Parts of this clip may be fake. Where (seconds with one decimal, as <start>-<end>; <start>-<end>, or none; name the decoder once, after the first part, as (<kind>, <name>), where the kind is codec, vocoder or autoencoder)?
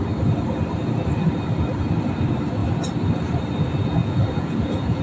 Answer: 4.0-5.0 (vocoder, Vocos)